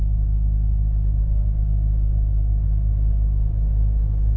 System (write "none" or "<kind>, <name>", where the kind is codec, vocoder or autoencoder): none